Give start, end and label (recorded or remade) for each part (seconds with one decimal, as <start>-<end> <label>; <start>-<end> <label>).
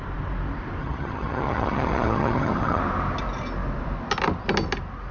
0.0-0.8 recorded; 0.8-2.8 remade; 2.8-5.1 recorded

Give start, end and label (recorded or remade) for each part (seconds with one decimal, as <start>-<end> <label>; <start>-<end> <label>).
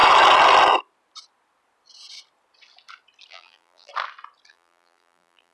0.0-3.3 recorded; 3.3-3.9 remade; 3.9-4.5 recorded; 4.5-5.5 remade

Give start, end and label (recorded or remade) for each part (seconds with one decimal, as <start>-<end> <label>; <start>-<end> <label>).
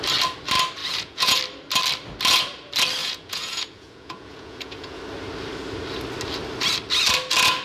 0.0-0.8 recorded; 0.8-1.4 remade; 1.4-3.0 recorded; 3.0-5.0 remade; 5.0-7.6 recorded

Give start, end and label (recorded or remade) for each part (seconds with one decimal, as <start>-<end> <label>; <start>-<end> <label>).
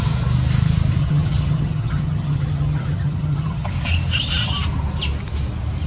0.0-1.0 recorded; 1.0-3.7 remade; 3.7-5.9 recorded